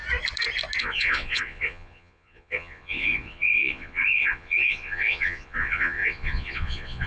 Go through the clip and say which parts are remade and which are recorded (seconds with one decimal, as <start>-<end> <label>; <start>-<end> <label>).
0.0-0.8 recorded; 0.8-7.1 remade